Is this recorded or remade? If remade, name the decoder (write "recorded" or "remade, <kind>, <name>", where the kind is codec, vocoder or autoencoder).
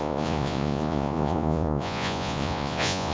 remade, vocoder, Vocos